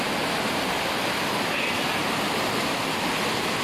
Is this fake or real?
real